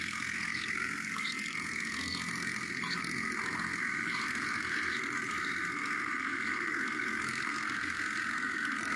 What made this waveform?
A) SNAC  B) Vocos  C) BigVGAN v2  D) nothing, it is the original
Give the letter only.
A